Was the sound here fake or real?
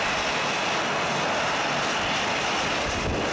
real